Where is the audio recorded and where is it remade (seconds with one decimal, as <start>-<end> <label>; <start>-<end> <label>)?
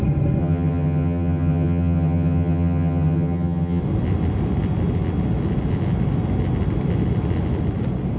0.0-0.4 recorded; 0.4-3.8 remade; 3.8-8.2 recorded